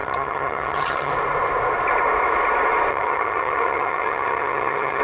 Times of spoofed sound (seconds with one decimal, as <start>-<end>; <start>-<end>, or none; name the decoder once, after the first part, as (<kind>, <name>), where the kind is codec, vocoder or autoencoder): 0.0-1.1 (vocoder, HiFi-GAN); 2.9-5.0